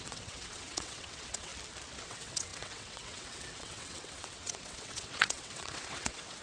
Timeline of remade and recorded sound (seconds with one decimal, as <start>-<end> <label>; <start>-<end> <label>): 0.0-1.5 remade; 1.5-2.0 recorded; 2.0-6.4 remade